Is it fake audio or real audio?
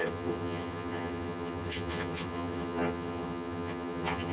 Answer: fake